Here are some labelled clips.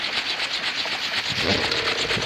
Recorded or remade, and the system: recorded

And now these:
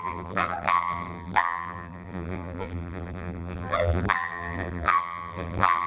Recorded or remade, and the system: remade, vocoder, BigVGAN v2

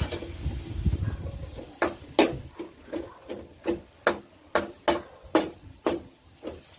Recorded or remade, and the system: recorded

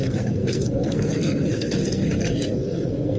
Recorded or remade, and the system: remade, codec, SNAC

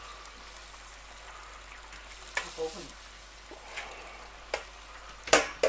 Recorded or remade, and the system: recorded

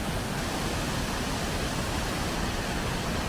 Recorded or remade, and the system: remade, vocoder, BigVGAN v2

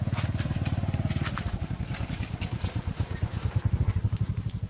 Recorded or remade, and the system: remade, vocoder, BigVGAN v2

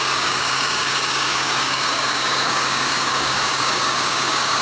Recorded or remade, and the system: remade, codec, DAC